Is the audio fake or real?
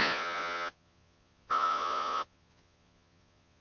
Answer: fake